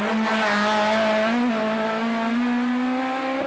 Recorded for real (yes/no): yes